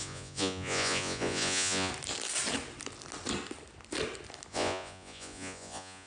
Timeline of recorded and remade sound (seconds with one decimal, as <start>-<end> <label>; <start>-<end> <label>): 0.0-1.9 remade; 1.9-4.5 recorded; 4.5-6.1 remade